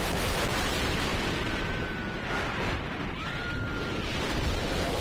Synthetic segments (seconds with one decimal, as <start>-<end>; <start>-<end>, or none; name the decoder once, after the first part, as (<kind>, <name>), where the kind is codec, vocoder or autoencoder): none